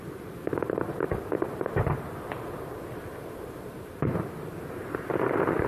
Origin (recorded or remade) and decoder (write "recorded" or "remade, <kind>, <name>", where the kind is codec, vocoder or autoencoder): remade, vocoder, BigVGAN v2